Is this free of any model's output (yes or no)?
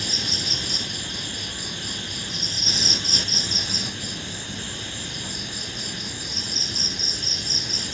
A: yes